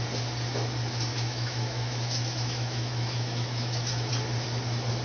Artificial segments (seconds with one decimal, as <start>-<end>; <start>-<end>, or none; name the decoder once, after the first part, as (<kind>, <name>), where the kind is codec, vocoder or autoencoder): 1.1-4.1 (autoencoder, DAC-VAE)